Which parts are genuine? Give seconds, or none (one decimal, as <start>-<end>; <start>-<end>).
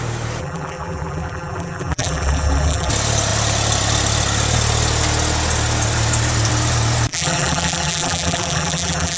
0.0-0.4; 2.9-7.1